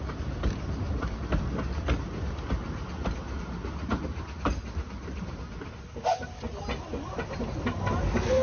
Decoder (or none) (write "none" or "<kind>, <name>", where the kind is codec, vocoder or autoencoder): none